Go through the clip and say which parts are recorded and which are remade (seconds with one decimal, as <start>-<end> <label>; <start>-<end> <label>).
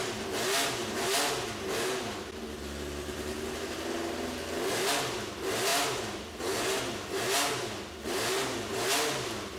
0.0-9.6 recorded